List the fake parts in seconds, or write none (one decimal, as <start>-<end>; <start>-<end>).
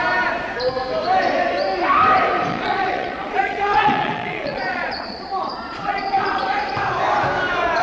2.5-6.5